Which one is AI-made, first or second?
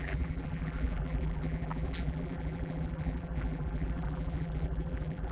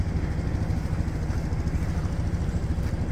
first